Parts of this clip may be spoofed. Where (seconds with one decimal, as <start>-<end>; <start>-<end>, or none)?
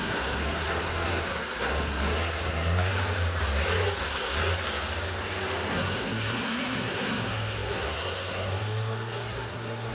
0.0-2.9; 4.0-4.4; 5.7-9.9